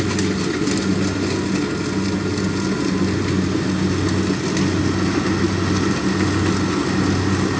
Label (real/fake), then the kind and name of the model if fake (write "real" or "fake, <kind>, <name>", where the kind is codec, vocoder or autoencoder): real